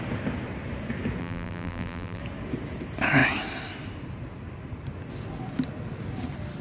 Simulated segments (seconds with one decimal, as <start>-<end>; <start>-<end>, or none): 1.2-2.2